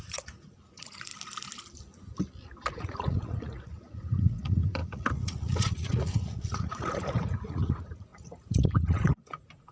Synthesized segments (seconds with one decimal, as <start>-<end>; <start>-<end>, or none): 0.0-1.1; 2.7-9.7